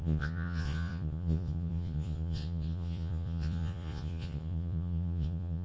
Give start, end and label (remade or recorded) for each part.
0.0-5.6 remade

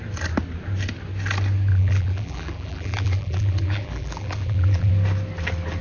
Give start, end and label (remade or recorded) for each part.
0.0-1.7 recorded; 1.7-4.9 remade; 4.9-5.8 recorded

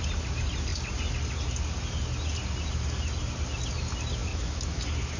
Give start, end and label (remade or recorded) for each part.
0.0-4.3 recorded; 4.3-4.8 remade; 4.8-5.2 recorded

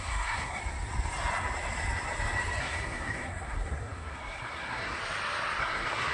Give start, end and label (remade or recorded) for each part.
0.0-0.6 remade; 0.6-2.6 recorded; 2.6-5.0 remade; 5.0-5.6 recorded; 5.6-6.1 remade

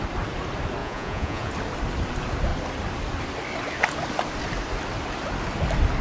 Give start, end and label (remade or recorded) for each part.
0.0-0.8 recorded; 0.8-1.5 remade; 1.5-6.0 recorded

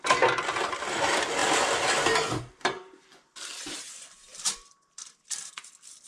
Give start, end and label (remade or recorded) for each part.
0.0-6.1 remade